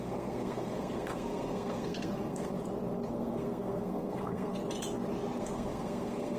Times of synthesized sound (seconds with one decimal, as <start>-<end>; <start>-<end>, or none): 0.0-2.5; 3.1-4.6; 5.4-6.4